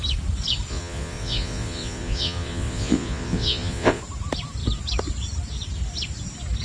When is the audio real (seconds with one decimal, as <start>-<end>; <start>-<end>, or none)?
0.0-0.7; 4.0-6.6